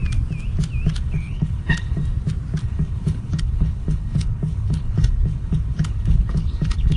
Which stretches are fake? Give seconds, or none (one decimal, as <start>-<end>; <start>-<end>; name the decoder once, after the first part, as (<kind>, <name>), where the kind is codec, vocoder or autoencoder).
1.0-2.0 (codec, HILCodec); 2.6-7.0